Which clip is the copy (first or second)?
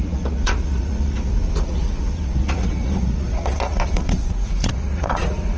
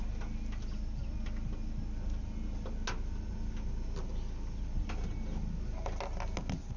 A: first